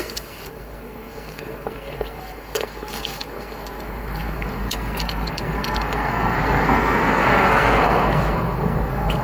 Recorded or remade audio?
remade